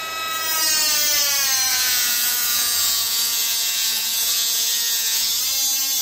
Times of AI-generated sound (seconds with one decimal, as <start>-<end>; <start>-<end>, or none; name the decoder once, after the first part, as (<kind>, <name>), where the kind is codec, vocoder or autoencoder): 1.7-5.3 (vocoder, Vocos)